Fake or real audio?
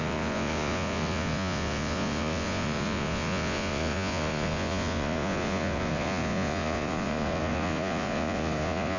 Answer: fake